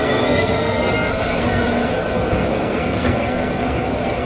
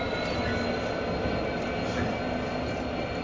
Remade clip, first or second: first